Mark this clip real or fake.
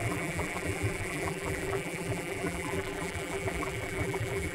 fake